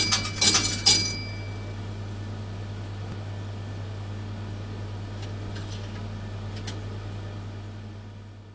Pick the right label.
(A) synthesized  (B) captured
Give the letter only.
B